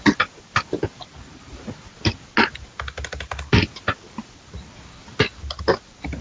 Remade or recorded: recorded